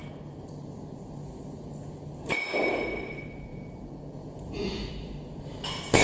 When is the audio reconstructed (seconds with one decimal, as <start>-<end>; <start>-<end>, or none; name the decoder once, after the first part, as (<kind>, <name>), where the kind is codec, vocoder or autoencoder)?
3.5-4.9 (vocoder, Vocos)